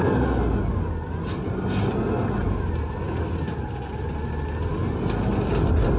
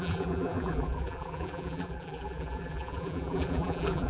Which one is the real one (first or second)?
first